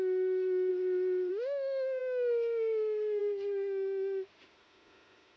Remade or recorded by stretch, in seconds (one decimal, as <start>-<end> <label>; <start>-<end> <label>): 0.0-0.7 remade; 0.7-1.3 recorded; 1.3-5.4 remade